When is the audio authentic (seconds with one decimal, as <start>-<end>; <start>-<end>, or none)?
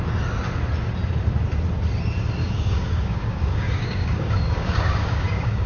0.0-2.4